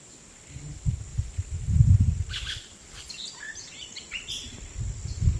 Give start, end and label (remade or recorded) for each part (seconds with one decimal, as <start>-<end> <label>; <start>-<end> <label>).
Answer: 0.0-5.4 recorded